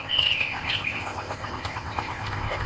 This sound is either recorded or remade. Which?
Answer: remade